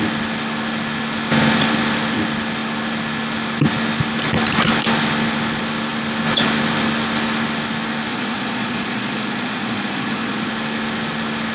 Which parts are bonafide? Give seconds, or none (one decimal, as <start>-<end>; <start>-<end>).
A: 0.0-8.1; 10.5-11.5